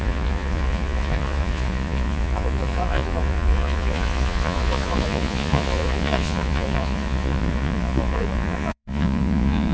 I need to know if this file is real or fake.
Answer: fake